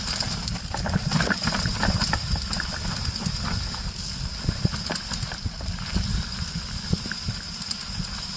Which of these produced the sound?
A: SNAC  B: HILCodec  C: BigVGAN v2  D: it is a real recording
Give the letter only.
D